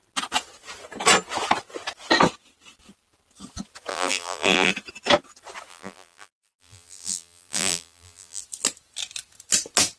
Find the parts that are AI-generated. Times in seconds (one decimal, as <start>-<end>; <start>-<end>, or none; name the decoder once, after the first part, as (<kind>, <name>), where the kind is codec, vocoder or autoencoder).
3.9-4.7 (vocoder, BigVGAN v2); 5.7-8.4